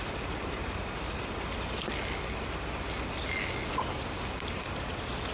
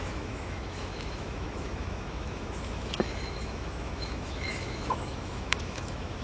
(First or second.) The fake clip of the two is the second